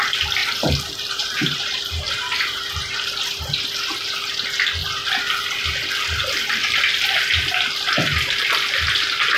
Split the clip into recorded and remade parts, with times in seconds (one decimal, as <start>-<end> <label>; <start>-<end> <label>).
0.0-0.4 recorded; 0.4-3.1 remade; 3.1-9.4 recorded